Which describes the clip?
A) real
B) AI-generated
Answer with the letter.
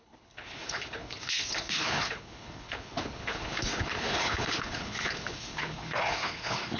B